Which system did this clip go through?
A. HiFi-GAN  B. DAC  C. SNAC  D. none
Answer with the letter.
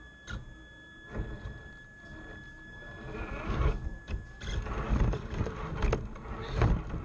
D